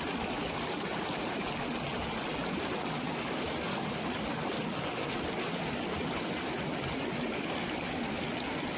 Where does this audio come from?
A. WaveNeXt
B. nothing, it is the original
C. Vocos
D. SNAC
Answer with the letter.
B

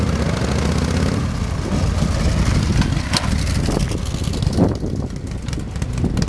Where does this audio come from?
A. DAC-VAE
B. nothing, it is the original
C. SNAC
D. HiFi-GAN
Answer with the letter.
B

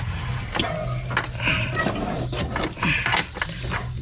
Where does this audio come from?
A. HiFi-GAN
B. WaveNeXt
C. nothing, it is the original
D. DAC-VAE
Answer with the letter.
C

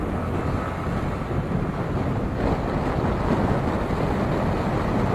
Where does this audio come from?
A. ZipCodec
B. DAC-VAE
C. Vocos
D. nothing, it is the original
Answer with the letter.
D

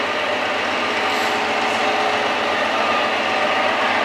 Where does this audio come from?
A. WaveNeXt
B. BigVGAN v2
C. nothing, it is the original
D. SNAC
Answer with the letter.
C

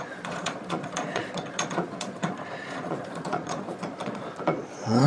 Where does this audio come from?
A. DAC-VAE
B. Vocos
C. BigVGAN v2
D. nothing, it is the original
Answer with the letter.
B